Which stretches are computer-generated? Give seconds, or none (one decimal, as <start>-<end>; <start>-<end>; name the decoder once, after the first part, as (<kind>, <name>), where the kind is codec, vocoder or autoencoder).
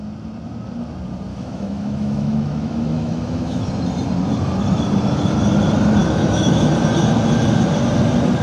1.3-3.7 (autoencoder, DAC-VAE); 6.0-6.7